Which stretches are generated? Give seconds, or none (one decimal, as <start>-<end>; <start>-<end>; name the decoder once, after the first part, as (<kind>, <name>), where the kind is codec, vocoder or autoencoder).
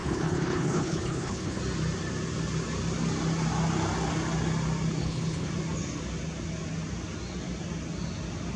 0.0-1.6 (codec, HILCodec); 5.0-5.5